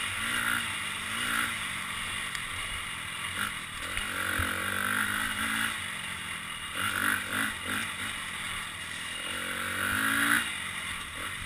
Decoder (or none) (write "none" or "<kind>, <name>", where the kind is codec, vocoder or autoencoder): none